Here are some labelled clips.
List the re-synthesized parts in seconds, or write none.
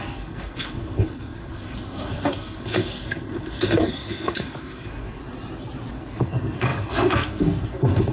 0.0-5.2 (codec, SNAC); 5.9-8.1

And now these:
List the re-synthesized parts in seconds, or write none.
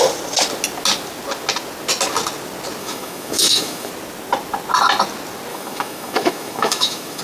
2.8-3.9 (autoencoder, DAC-VAE); 5.5-7.2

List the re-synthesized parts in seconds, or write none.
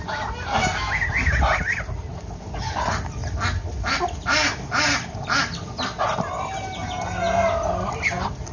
none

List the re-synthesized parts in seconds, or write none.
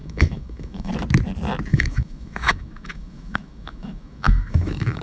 0.0-0.9 (autoencoder, DAC-VAE); 1.7-5.0